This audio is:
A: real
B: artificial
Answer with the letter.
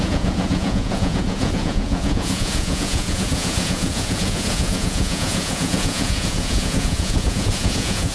B